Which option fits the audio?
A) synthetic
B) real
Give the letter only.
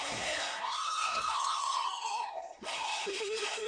A